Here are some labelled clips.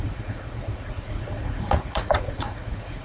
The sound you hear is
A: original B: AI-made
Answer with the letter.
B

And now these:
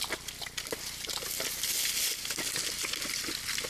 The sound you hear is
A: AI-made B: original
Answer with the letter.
B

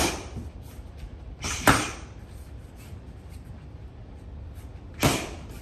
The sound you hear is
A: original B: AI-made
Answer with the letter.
B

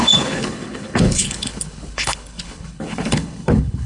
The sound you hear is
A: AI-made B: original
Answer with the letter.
A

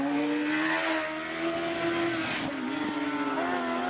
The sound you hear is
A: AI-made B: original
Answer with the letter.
B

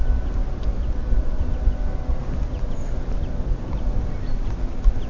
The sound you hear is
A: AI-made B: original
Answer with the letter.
B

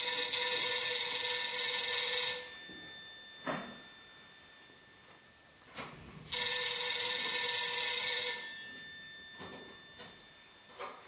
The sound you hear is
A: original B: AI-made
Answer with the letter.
A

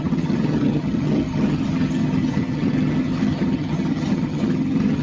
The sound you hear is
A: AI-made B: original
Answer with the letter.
A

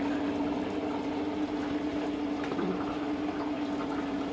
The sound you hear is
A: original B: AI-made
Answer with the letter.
A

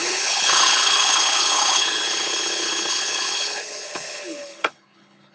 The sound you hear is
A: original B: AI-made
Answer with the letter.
B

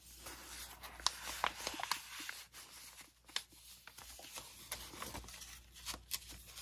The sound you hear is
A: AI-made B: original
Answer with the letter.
B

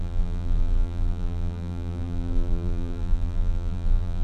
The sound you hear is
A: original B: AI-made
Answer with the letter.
B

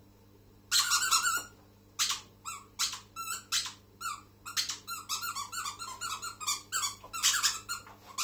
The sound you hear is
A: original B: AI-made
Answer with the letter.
A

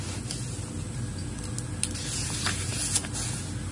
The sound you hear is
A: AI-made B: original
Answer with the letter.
B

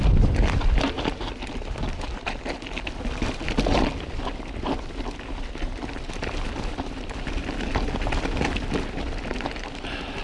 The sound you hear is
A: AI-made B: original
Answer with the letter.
B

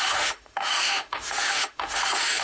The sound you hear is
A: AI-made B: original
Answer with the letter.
A